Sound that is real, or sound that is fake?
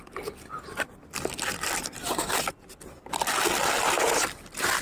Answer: fake